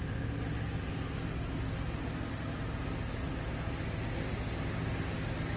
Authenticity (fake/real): real